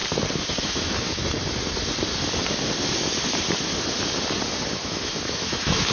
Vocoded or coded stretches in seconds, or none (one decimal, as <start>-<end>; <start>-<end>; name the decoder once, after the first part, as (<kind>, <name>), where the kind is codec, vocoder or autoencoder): 0.6-1.2 (autoencoder, DAC-VAE); 4.7-5.9